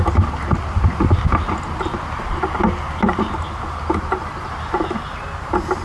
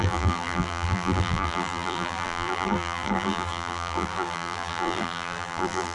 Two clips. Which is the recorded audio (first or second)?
first